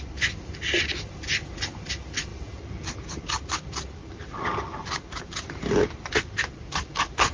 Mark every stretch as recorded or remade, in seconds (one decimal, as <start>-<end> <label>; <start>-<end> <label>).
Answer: 0.0-7.3 recorded

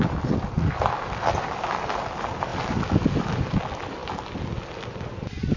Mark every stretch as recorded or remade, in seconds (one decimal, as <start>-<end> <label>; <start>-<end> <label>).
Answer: 0.0-5.6 recorded